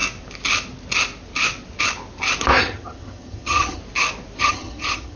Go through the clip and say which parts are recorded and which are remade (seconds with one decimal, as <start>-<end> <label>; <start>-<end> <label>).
0.0-2.6 recorded; 2.6-3.8 remade; 3.8-4.4 recorded; 4.4-5.2 remade